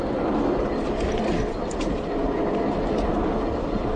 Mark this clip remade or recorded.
recorded